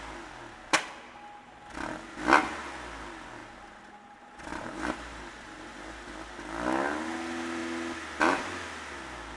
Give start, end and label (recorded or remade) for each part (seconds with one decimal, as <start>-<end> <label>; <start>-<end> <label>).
0.0-4.5 recorded; 4.5-6.1 remade; 6.1-9.4 recorded